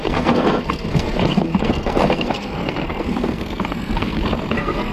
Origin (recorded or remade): remade